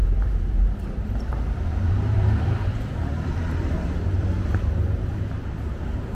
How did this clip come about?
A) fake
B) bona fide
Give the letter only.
A